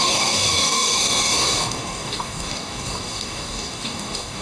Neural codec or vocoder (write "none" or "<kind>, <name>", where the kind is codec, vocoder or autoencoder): codec, DAC